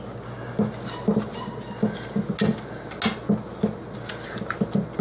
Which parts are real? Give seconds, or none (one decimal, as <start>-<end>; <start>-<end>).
0.0-5.0